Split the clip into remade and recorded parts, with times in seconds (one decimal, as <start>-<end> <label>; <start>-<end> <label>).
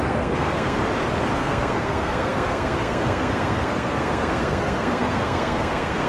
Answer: 0.0-0.8 remade; 0.8-1.3 recorded; 1.3-6.1 remade